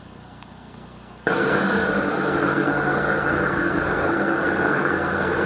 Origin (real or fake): fake